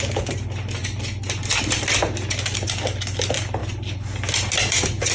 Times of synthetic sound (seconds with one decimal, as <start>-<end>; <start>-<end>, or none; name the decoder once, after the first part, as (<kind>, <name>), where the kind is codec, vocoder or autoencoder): none